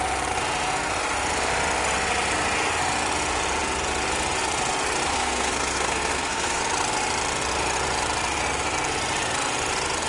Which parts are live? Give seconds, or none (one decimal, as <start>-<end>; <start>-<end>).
0.0-5.1; 6.6-10.1